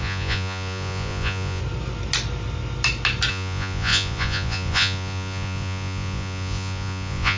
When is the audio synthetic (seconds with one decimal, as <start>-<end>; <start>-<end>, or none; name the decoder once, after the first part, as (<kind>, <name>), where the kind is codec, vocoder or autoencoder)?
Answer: 0.0-1.6 (vocoder, Vocos); 3.3-7.4